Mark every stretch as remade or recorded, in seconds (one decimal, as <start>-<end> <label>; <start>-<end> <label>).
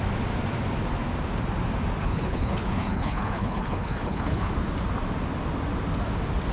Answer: 0.0-2.0 recorded; 2.0-4.5 remade; 4.5-6.5 recorded